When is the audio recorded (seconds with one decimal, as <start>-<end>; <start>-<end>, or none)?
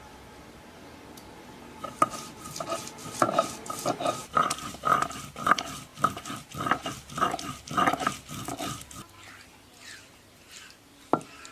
0.0-11.5